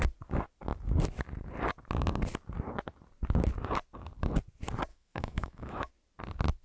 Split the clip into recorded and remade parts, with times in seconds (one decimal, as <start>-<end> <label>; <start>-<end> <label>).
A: 0.0-4.9 recorded; 4.9-5.9 remade; 5.9-6.6 recorded